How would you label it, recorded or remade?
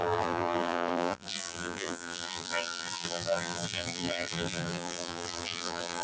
remade